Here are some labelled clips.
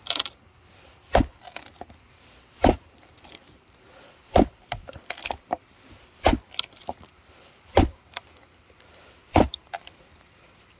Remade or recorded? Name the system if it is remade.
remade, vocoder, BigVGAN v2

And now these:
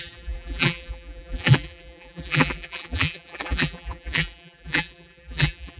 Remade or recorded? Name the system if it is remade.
remade, vocoder, BigVGAN v2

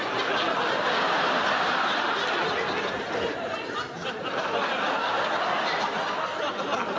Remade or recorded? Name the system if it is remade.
recorded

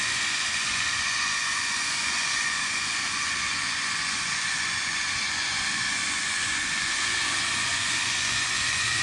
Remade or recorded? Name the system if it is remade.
remade, vocoder, Vocos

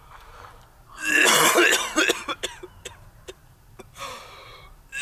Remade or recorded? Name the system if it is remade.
recorded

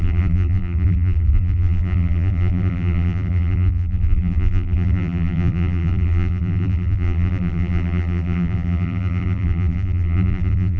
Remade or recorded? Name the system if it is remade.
remade, vocoder, BigVGAN v2